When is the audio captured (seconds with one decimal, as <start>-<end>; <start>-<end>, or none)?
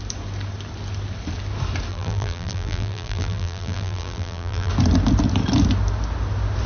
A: 0.0-1.9; 4.7-6.7